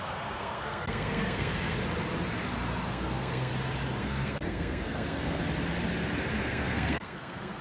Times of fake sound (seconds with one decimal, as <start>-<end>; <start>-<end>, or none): 0.0-1.8; 2.9-3.5; 4.0-5.4; 6.3-7.6